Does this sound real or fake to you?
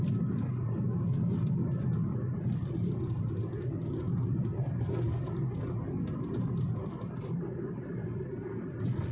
real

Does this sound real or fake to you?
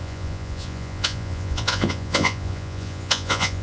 fake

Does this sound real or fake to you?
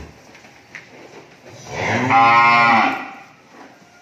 real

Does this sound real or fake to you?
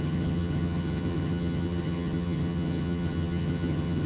fake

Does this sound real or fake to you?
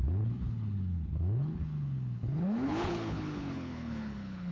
fake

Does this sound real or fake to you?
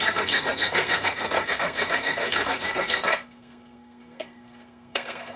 fake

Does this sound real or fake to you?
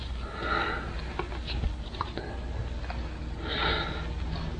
real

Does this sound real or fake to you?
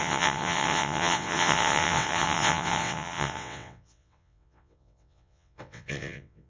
fake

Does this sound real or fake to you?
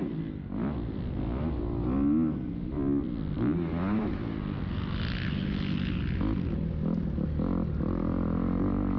real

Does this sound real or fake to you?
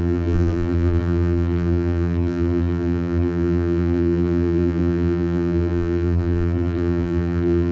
fake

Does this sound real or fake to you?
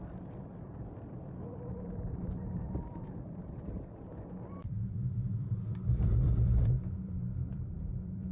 fake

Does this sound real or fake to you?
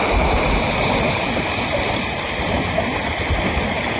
real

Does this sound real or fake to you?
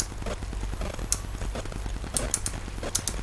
real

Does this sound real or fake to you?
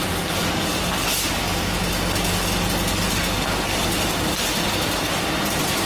real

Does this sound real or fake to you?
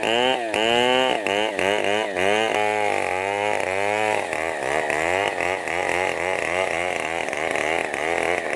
real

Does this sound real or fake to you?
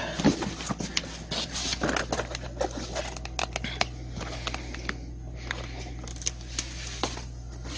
real